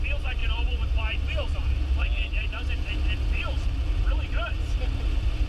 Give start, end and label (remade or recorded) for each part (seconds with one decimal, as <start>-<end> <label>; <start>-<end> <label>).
0.0-0.4 recorded; 0.4-1.6 remade; 1.6-5.5 recorded